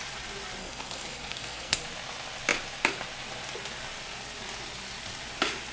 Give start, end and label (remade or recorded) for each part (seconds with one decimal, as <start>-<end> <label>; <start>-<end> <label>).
0.0-0.6 recorded; 0.6-1.8 remade; 1.8-5.7 recorded